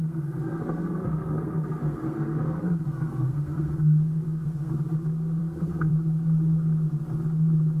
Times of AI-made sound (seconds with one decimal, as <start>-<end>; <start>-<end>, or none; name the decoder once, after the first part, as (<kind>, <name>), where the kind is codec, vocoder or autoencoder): 0.0-4.7 (codec, SNAC); 5.4-5.9